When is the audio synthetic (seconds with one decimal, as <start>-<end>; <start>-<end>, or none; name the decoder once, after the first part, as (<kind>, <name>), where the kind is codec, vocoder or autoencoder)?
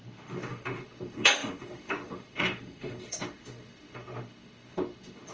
0.0-5.3 (autoencoder, DAC-VAE)